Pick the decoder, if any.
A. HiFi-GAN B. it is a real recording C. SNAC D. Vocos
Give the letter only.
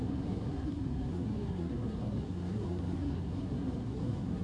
C